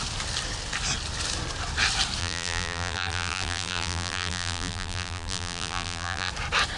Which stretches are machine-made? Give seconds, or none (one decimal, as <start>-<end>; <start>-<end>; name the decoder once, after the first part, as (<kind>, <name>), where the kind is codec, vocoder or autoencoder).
2.2-6.3 (vocoder, BigVGAN v2)